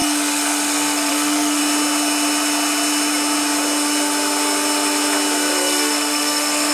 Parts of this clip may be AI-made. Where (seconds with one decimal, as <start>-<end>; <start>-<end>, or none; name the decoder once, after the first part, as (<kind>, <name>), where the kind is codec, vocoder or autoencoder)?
0.0-1.6 (codec, SNAC); 5.5-6.7